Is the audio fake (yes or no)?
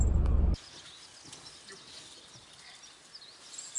no